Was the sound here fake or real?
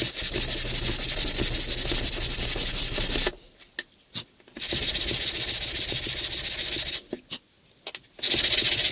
real